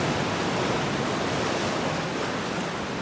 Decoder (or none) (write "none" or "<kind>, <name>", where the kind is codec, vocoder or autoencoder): none